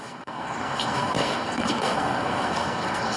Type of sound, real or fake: fake